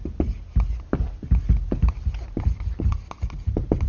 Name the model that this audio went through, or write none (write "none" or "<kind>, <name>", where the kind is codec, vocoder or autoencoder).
none